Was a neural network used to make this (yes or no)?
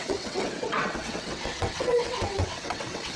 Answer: yes